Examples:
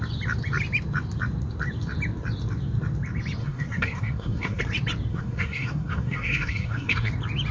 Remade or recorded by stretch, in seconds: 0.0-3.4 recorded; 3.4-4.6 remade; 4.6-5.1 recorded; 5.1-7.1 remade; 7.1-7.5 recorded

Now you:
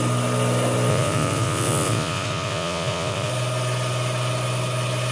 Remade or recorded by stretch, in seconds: 0.0-0.9 recorded; 0.9-3.3 remade; 3.3-5.1 recorded

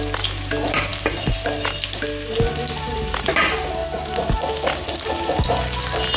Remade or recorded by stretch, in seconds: 0.0-6.2 recorded